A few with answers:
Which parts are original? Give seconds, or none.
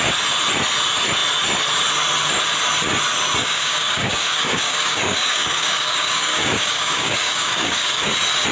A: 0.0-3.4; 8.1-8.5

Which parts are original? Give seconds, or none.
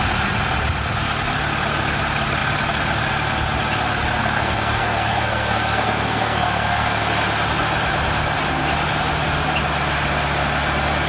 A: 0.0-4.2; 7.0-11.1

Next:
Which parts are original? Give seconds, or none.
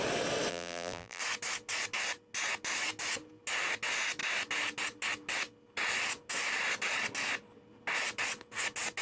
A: 0.0-0.5; 1.2-9.0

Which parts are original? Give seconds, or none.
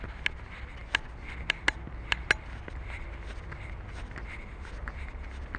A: 0.0-5.6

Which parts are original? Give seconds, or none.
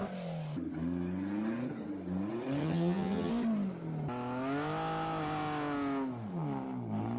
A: 0.0-2.6; 3.3-7.2